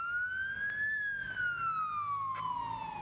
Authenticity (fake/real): real